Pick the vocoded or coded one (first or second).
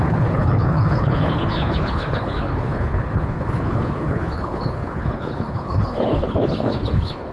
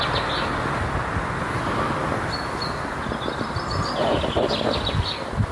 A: first